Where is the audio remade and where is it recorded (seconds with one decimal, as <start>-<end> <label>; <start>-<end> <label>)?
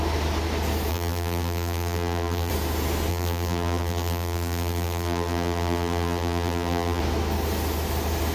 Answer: 0.0-0.9 recorded; 0.9-2.5 remade; 2.5-3.1 recorded; 3.1-7.0 remade; 7.0-8.3 recorded